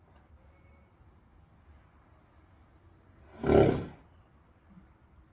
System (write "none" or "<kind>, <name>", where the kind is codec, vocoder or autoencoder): none